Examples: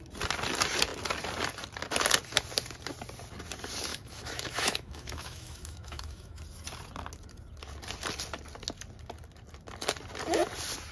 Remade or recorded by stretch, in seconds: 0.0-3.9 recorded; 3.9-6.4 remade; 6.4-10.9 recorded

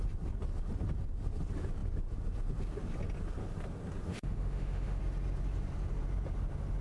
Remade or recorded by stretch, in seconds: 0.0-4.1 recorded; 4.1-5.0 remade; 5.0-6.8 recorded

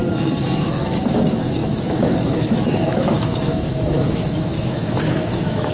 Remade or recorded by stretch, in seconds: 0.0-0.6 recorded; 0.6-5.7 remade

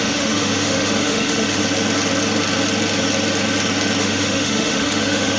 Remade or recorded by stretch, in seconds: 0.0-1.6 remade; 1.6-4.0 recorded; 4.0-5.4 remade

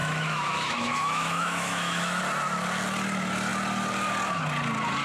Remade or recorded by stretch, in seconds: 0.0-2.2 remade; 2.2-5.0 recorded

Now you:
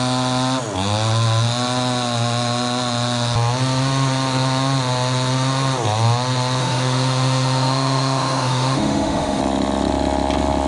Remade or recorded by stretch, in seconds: 0.0-6.6 recorded; 6.6-9.4 remade; 9.4-10.7 recorded

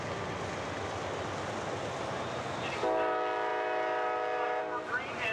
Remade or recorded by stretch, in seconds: 0.0-5.3 recorded